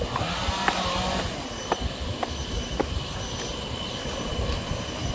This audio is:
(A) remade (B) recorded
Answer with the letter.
B